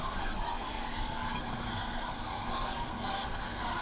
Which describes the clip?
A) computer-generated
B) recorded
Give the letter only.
A